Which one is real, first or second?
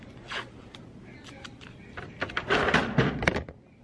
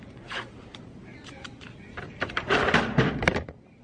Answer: first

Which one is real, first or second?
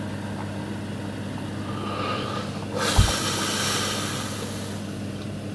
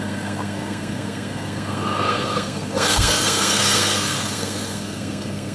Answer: first